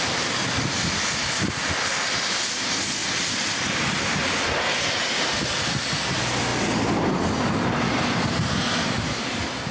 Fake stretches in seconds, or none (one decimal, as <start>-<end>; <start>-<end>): 0.0-9.7